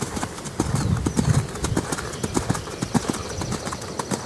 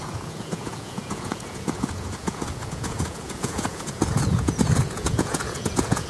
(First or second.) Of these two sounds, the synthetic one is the second